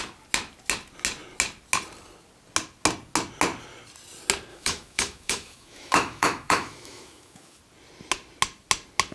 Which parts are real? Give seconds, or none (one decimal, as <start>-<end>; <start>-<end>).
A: 0.0-4.5; 7.6-9.1